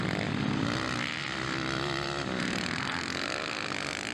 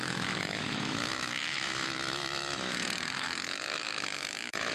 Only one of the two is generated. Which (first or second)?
second